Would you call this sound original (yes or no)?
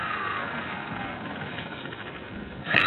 no